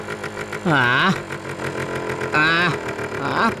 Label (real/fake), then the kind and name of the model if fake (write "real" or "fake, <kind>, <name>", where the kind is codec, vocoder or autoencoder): real